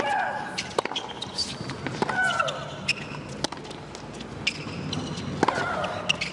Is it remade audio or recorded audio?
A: recorded